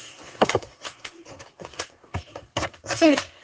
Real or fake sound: fake